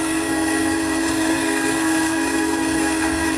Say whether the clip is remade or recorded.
remade